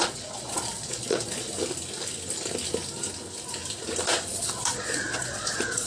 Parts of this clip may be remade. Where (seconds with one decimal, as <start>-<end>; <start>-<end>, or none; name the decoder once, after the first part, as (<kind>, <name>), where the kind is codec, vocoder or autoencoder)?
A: 0.0-1.5 (vocoder, Vocos); 4.3-5.9

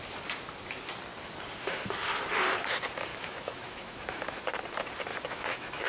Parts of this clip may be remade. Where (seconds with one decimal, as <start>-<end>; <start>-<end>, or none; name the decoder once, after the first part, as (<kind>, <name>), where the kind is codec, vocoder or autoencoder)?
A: 3.1-4.4 (autoencoder, DAC-VAE); 5.1-5.9

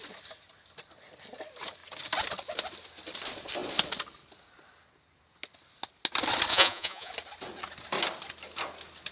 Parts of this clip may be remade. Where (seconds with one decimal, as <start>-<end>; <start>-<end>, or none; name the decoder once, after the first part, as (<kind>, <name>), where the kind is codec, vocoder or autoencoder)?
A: 6.5-7.1 (vocoder, Vocos)